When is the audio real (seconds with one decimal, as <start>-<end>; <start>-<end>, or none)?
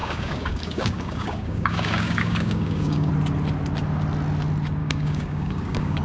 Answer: 3.1-4.8